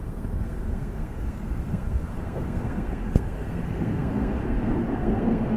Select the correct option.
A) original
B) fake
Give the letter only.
B